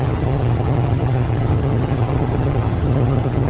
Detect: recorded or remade remade